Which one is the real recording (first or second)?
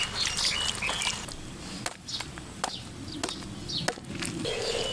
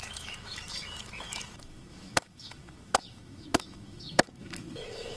first